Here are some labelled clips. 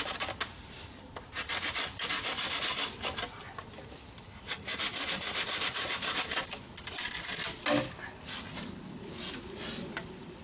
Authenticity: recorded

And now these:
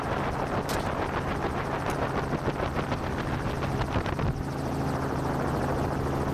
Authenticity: recorded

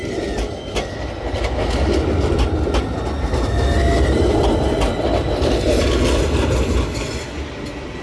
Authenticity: recorded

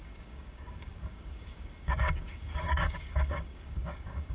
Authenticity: remade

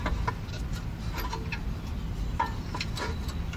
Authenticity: recorded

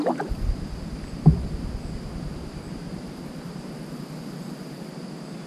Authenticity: recorded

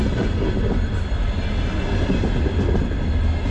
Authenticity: recorded